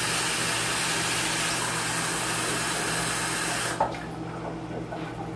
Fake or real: real